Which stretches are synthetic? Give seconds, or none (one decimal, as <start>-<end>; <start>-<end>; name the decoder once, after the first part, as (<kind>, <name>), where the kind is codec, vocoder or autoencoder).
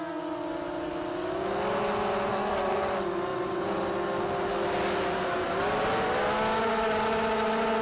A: 2.3-2.9 (codec, SNAC)